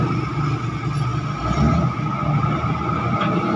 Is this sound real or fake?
real